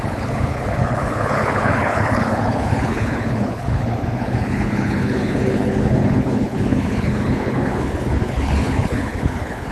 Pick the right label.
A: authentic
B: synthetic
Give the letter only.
B